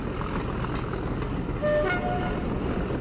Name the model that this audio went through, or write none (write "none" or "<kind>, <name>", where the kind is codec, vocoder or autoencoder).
none